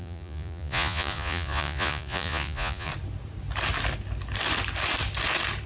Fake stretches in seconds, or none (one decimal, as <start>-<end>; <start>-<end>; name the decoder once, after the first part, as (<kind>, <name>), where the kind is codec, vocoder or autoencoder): 0.0-2.9 (vocoder, Vocos)